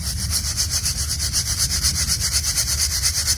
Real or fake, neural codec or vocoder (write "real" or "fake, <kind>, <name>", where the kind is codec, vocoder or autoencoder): real